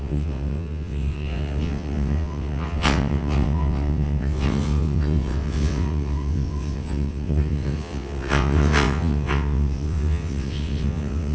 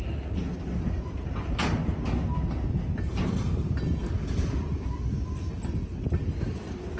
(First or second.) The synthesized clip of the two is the first